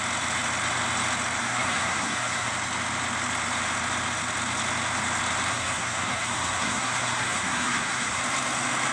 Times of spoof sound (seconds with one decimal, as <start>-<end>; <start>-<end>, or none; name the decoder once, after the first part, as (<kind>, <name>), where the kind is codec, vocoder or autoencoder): 1.4-2.5 (codec, SNAC); 5.5-8.2